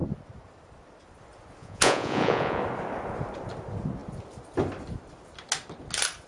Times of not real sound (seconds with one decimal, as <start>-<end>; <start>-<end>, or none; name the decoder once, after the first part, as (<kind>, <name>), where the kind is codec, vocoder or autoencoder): 1.6-2.6 (vocoder, Vocos)